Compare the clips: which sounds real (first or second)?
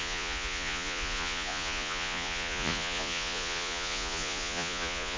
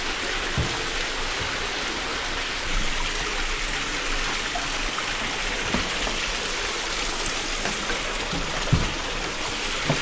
second